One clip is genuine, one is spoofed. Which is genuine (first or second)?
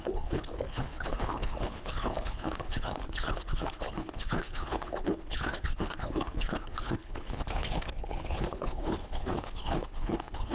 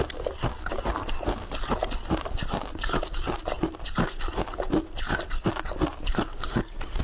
second